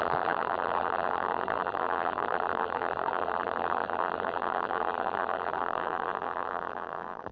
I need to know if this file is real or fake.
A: fake